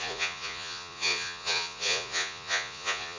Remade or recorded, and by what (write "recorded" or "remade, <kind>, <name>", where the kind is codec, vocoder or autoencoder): remade, vocoder, Vocos